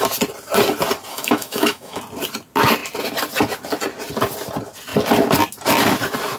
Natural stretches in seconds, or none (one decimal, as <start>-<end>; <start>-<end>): 0.0-1.1; 2.0-6.4